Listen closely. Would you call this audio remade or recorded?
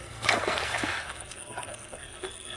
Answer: remade